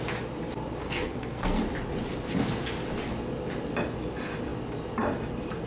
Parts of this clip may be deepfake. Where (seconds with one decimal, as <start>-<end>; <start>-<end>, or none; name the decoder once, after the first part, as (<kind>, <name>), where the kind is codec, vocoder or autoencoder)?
0.8-1.6 (codec, SNAC)